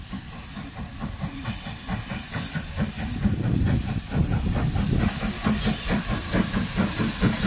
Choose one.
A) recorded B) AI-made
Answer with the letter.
A